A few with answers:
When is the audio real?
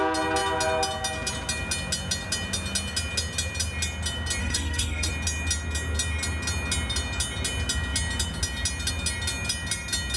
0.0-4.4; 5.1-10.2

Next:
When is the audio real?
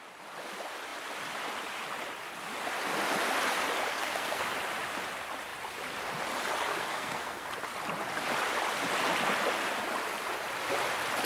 0.0-3.9; 4.4-6.7; 7.5-11.3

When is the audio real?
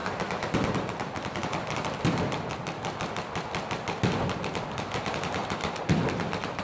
0.0-6.6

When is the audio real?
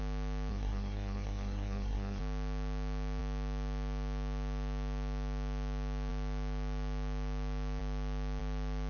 0.0-0.5; 2.2-8.9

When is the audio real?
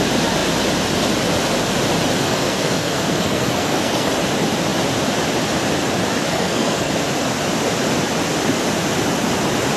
0.0-2.2; 4.1-6.2; 6.9-9.8